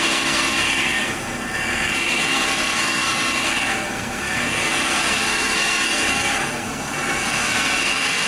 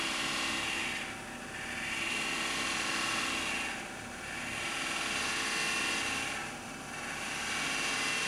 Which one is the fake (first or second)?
first